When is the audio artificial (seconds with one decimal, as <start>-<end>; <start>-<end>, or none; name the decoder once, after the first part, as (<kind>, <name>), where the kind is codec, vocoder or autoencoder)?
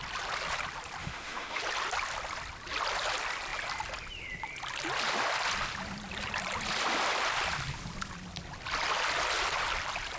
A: 1.0-1.6 (autoencoder, DAC-VAE)